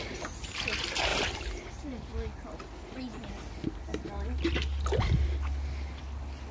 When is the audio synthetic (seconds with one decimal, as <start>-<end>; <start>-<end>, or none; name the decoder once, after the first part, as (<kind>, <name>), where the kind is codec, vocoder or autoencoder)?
none